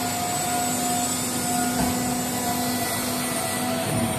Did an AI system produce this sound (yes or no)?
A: no